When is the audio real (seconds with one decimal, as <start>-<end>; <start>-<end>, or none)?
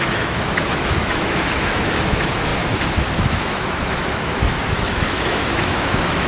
2.5-3.3